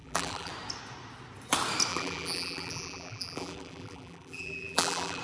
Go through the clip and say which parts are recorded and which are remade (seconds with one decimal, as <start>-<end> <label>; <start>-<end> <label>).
0.0-0.5 remade; 0.5-1.9 recorded; 1.9-5.2 remade